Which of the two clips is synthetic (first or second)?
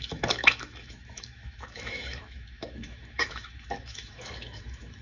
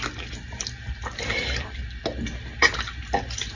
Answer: first